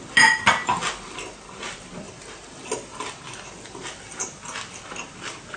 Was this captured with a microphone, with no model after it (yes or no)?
yes